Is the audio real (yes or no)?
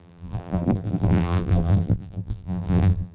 no